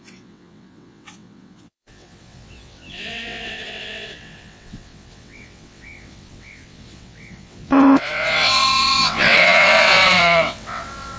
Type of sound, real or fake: fake